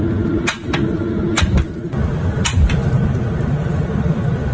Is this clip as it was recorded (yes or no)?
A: yes